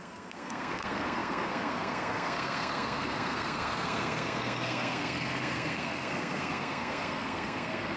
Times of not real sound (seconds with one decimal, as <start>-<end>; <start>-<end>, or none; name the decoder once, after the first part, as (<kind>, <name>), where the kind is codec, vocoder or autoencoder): 0.0-8.0 (codec, SNAC)